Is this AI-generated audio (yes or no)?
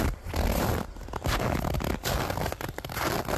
no